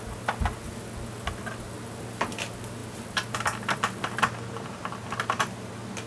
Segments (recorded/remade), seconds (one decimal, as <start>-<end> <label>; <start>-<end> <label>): 0.0-6.1 recorded